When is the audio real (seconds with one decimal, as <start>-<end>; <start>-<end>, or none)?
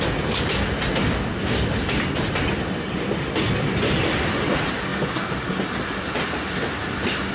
0.0-7.3